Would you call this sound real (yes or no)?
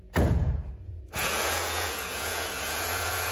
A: no